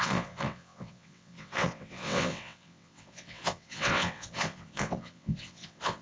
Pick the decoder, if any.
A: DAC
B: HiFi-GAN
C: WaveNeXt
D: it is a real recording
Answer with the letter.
C